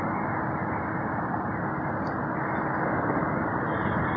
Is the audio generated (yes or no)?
no